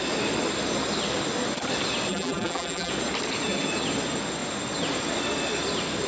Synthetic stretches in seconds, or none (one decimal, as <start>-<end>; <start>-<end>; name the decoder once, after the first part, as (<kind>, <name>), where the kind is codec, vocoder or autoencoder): 2.1-2.9 (vocoder, BigVGAN v2)